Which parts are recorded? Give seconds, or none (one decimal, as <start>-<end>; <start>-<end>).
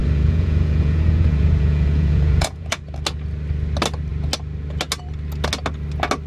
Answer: 2.8-6.3